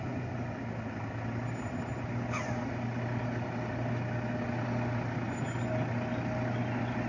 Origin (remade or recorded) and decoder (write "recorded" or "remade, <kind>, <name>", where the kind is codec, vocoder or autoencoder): recorded